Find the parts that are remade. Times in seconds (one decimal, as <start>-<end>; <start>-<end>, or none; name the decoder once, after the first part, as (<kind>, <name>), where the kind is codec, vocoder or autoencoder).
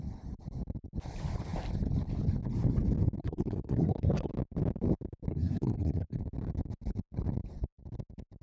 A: 3.2-4.3 (codec, SNAC); 5.3-6.2